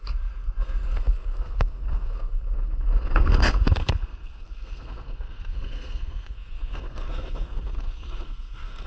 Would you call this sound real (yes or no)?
no